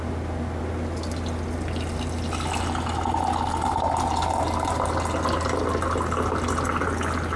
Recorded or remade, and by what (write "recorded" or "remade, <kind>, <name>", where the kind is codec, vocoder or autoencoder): recorded